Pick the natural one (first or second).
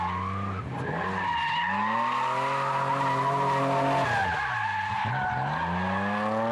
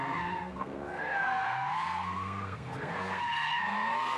first